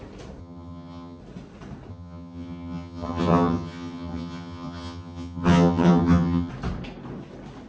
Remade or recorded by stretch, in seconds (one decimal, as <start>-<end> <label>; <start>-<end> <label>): 0.0-0.4 recorded; 0.4-1.2 remade; 1.2-1.9 recorded; 1.9-6.5 remade; 6.5-7.7 recorded